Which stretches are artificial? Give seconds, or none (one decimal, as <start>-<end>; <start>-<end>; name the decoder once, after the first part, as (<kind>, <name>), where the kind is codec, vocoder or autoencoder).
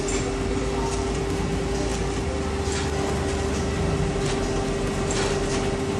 none